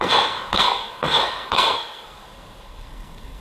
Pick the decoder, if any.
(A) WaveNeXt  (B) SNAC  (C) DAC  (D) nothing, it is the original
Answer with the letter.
B